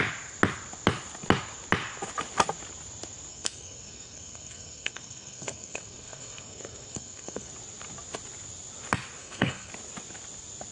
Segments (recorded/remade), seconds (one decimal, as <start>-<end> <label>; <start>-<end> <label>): 0.0-3.3 recorded; 3.3-7.5 remade; 7.5-9.2 recorded; 9.2-9.7 remade; 9.7-10.7 recorded